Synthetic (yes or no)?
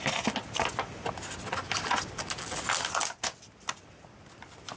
no